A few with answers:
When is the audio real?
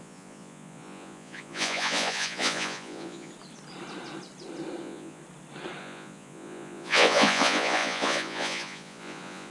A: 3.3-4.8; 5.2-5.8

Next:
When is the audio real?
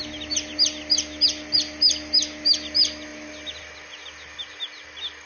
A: 0.0-5.3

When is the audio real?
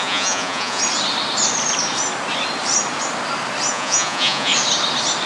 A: 0.8-3.7; 4.5-5.3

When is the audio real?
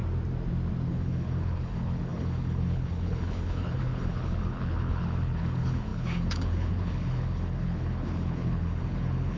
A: 0.0-0.9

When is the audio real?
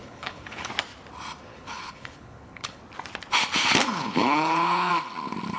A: 0.7-1.5; 2.8-3.8; 4.9-5.6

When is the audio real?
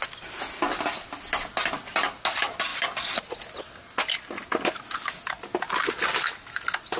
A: 0.0-7.0